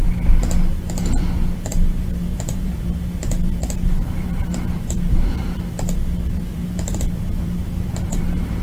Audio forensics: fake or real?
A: fake